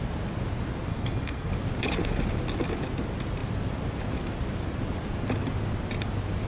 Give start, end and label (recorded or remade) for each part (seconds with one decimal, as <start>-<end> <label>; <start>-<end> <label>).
0.0-0.9 recorded; 0.9-1.5 remade; 1.5-6.5 recorded